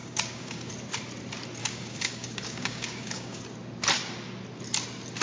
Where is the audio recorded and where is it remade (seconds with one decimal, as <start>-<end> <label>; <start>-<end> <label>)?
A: 0.0-0.7 remade; 0.7-1.6 recorded; 1.6-3.4 remade; 3.4-5.2 recorded